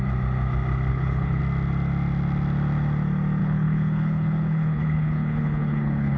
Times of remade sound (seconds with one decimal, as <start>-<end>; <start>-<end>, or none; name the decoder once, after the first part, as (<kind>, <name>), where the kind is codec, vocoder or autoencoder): 0.9-1.4 (codec, HILCodec); 3.4-6.2